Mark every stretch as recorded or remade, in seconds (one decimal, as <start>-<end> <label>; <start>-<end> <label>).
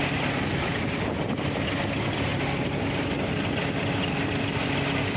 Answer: 0.0-5.2 recorded